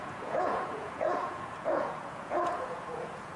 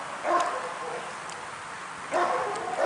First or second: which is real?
second